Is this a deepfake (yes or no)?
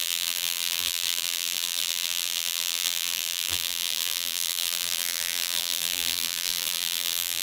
yes